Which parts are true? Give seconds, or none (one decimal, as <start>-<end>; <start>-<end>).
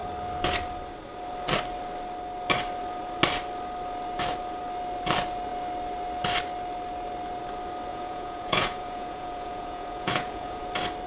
0.0-7.9; 10.6-11.1